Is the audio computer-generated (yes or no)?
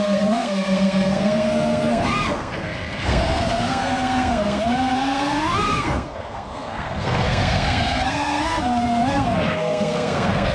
yes